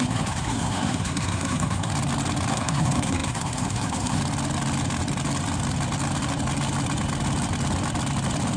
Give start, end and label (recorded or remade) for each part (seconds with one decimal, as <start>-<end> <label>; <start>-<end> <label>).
0.0-1.9 remade; 1.9-2.5 recorded; 2.5-4.2 remade; 4.2-8.6 recorded

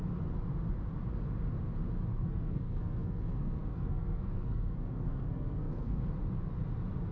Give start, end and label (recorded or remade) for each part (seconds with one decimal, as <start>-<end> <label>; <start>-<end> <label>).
0.0-2.1 recorded; 2.1-6.1 remade; 6.1-7.1 recorded

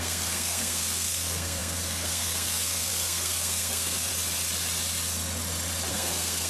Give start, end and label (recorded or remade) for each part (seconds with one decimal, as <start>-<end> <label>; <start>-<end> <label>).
0.0-4.1 remade; 4.1-5.9 recorded; 5.9-6.5 remade

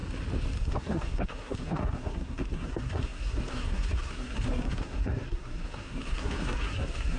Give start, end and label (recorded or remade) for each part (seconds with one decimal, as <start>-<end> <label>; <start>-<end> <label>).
0.0-0.6 recorded; 0.6-7.2 remade

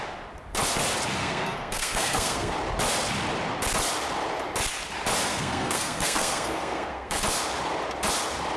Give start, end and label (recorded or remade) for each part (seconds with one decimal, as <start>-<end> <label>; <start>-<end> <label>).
0.0-1.2 recorded; 1.2-2.5 remade; 2.5-5.3 recorded; 5.3-7.2 remade; 7.2-8.6 recorded

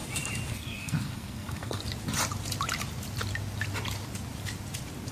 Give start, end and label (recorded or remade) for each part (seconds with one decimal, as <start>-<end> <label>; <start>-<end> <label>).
0.0-0.5 recorded; 0.5-1.8 remade; 1.8-5.1 recorded